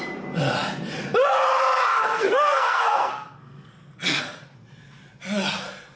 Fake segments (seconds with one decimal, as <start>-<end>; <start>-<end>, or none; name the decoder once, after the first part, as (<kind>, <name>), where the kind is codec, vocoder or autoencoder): 1.9-4.2 (codec, SNAC)